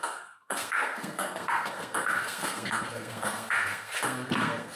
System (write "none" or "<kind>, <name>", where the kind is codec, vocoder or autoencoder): codec, SNAC